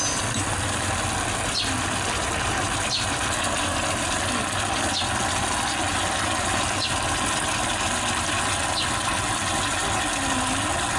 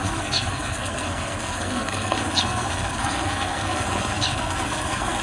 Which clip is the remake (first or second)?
second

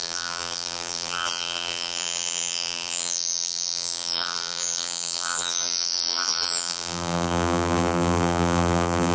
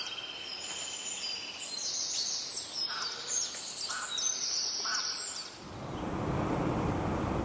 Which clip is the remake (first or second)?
first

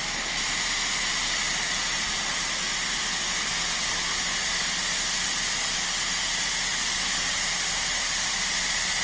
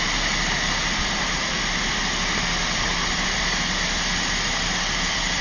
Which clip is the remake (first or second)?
second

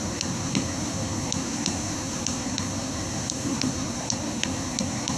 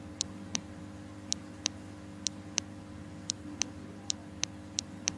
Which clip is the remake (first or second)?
first